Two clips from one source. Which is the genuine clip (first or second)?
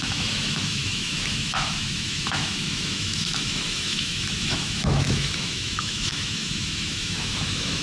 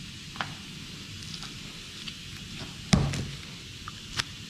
second